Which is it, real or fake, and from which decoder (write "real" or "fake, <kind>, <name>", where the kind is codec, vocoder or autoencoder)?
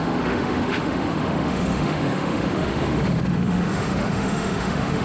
fake, autoencoder, DAC-VAE